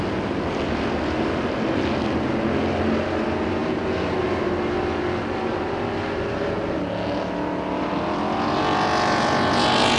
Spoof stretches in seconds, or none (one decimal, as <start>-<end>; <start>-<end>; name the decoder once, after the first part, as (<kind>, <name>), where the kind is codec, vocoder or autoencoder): none